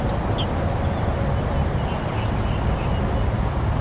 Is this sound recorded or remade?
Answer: recorded